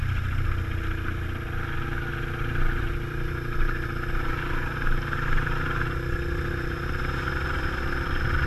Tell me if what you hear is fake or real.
real